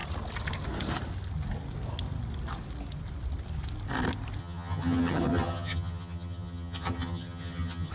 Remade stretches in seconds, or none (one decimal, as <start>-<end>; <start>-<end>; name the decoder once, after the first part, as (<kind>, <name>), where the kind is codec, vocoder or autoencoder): 4.4-7.9 (vocoder, HiFi-GAN)